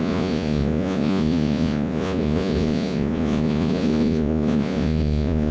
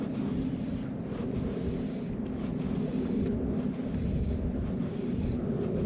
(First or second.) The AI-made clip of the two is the first